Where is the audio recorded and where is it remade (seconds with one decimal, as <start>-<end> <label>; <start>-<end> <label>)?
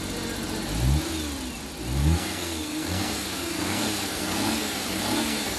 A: 0.0-2.0 recorded; 2.0-5.6 remade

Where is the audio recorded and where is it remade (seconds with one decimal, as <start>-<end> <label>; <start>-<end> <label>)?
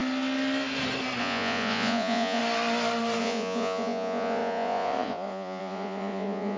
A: 0.0-1.2 recorded; 1.2-2.4 remade; 2.4-3.2 recorded; 3.2-6.6 remade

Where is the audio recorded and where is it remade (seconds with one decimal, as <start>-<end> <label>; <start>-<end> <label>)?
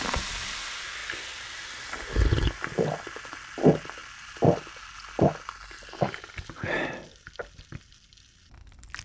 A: 0.0-9.0 recorded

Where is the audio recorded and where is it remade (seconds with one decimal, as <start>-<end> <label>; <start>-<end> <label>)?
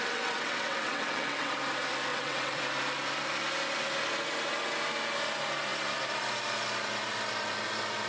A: 0.0-1.5 remade; 1.5-2.1 recorded; 2.1-2.6 remade; 2.6-8.1 recorded